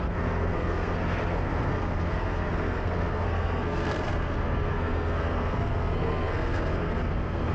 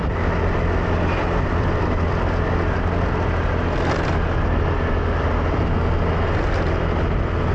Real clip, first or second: second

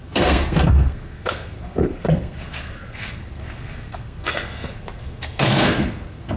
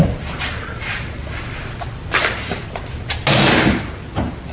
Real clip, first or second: second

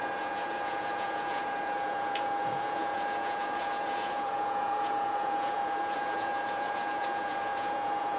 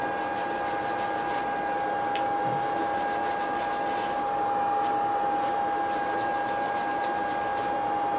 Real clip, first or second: second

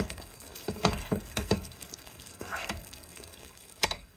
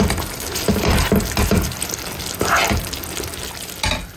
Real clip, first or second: second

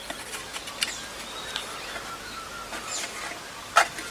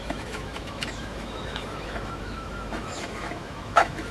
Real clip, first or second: first